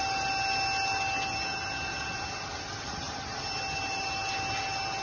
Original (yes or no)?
yes